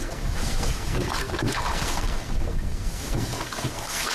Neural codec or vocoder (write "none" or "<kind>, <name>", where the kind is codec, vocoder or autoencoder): codec, SNAC